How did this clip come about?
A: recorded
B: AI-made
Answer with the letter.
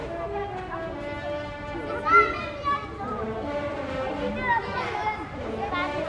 A